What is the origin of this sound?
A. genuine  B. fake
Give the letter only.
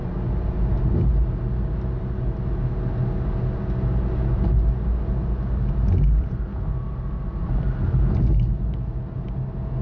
A